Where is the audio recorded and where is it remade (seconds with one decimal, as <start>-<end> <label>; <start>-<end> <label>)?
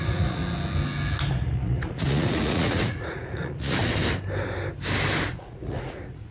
0.0-0.4 remade; 0.4-1.3 recorded; 1.3-3.8 remade; 3.8-5.3 recorded; 5.3-6.3 remade